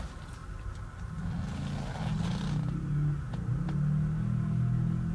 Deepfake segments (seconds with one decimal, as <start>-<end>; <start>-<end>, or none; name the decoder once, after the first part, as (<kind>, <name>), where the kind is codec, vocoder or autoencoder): none